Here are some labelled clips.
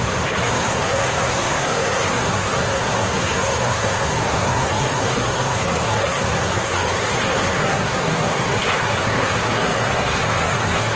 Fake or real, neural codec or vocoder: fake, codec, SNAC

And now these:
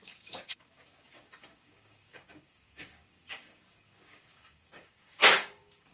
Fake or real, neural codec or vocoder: fake, codec, DAC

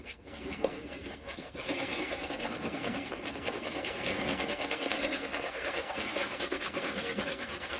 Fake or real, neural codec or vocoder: fake, codec, SNAC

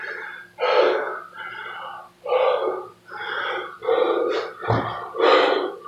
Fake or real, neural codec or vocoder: real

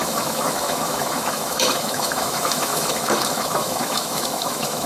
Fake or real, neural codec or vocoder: fake, autoencoder, DAC-VAE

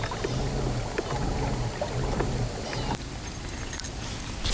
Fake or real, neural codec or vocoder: real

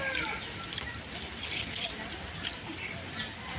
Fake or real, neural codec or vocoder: real